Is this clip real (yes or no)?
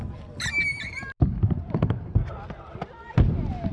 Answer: yes